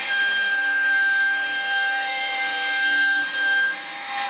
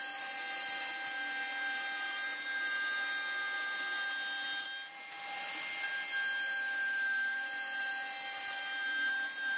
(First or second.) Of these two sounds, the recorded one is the second